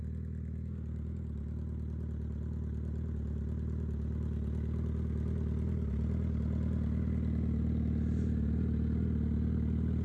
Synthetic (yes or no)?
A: no